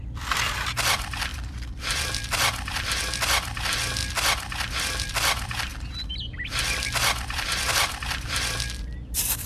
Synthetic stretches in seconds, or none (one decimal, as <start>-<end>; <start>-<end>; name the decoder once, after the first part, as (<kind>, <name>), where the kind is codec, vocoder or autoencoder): 0.0-4.0 (vocoder, BigVGAN v2); 4.8-9.5